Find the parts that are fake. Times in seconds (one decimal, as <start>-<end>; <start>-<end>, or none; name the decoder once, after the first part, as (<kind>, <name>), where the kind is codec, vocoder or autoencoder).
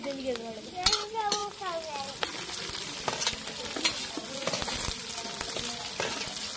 none